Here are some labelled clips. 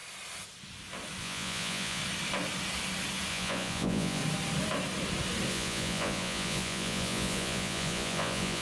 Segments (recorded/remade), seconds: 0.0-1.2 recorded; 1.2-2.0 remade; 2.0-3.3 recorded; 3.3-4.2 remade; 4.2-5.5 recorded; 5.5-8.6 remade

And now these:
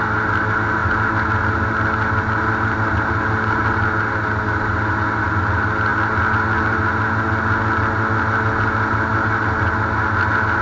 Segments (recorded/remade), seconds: 0.0-10.6 recorded

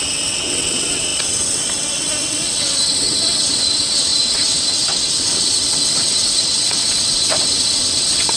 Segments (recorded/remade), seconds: 0.0-8.4 remade